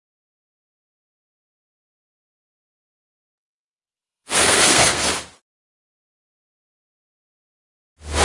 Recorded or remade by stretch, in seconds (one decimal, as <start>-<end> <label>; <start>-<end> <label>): 0.0-2.1 recorded; 2.1-5.1 remade; 5.1-8.2 recorded